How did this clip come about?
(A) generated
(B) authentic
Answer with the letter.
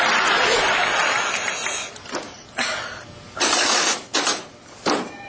B